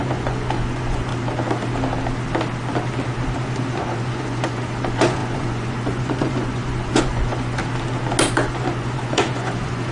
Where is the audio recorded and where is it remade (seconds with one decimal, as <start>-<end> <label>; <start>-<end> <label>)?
0.0-1.1 remade; 1.1-3.8 recorded; 3.8-7.6 remade; 7.6-8.3 recorded; 8.3-9.9 remade